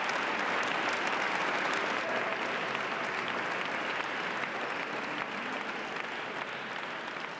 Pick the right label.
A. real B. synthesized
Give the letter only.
A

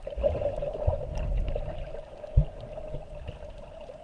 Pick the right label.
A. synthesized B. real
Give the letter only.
B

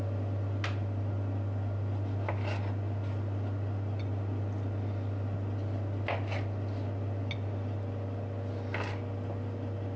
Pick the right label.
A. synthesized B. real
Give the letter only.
B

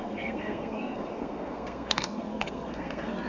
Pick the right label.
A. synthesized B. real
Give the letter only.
A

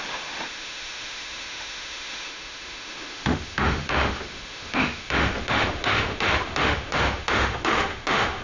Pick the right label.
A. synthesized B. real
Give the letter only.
A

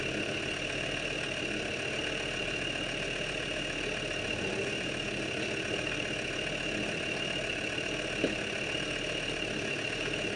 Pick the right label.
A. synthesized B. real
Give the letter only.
B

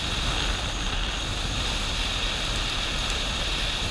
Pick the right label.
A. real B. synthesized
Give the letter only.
A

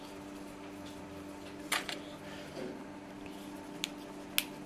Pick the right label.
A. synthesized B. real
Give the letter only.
B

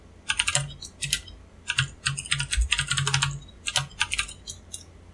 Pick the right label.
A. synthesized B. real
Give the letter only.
B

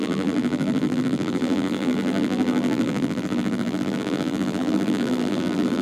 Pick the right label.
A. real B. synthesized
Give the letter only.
B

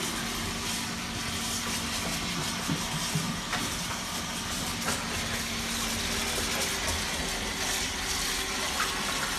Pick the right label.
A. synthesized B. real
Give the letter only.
B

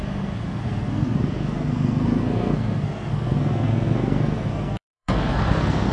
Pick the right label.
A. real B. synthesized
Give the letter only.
B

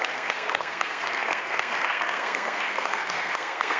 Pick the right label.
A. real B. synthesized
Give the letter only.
B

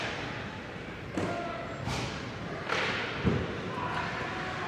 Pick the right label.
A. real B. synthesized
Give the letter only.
B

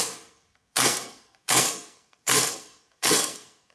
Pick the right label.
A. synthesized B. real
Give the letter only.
A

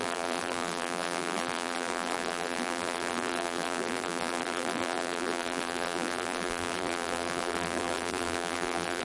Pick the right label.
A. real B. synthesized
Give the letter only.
B